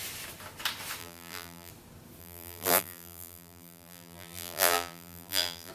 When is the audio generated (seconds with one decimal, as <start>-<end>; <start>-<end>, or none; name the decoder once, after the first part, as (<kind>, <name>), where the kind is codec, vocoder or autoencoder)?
1.0-1.7 (vocoder, BigVGAN v2); 2.2-5.7